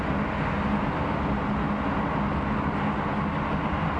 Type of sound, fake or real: real